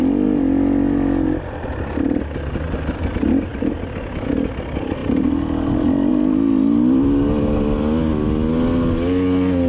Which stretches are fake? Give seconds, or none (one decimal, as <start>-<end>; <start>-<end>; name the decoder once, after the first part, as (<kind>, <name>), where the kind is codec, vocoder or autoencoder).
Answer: none